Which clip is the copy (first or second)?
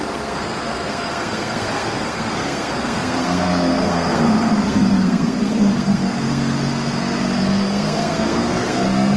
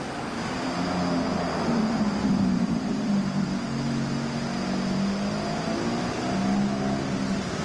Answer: first